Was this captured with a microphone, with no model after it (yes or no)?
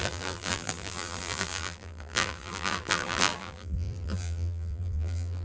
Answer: no